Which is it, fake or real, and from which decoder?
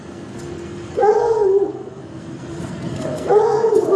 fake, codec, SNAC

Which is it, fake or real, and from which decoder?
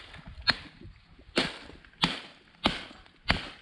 real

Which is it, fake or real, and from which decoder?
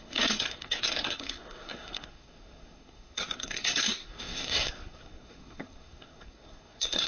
fake, codec, SNAC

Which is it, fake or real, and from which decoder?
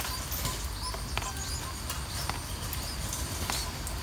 real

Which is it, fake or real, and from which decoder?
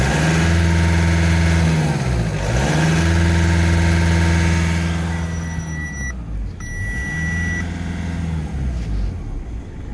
real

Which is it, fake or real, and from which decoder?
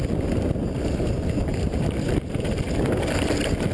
real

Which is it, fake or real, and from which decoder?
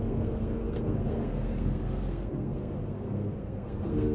fake, codec, SNAC